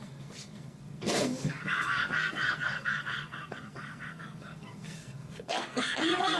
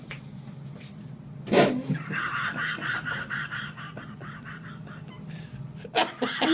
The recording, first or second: second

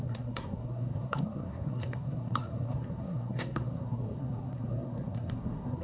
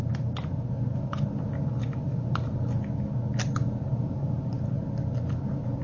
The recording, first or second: second